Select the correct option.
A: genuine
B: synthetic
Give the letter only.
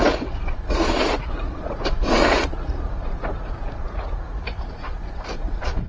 B